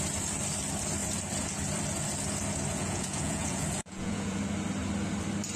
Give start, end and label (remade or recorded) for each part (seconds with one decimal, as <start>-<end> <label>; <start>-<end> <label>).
0.0-2.7 recorded; 2.7-4.4 remade; 4.4-5.6 recorded